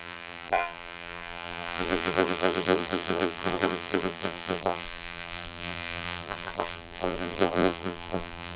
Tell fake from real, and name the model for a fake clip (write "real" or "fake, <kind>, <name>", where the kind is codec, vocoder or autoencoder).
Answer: fake, vocoder, BigVGAN v2